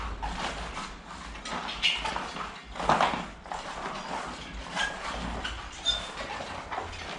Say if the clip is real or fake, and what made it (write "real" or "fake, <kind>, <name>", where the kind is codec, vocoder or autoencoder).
real